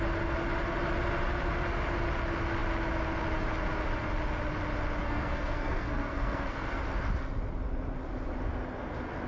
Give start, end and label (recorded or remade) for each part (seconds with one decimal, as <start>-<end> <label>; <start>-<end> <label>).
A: 0.0-5.0 recorded; 5.0-6.8 remade; 6.8-9.3 recorded